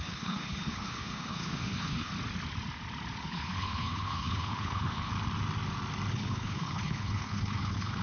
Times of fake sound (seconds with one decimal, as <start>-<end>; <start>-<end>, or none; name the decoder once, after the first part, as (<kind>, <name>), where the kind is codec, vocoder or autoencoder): 0.0-2.1 (codec, HILCodec); 3.2-5.1; 6.1-8.0